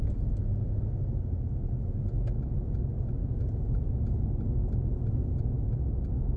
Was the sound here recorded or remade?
recorded